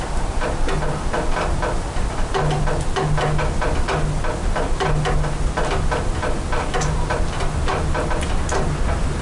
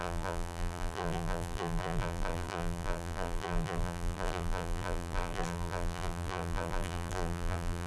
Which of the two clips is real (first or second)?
first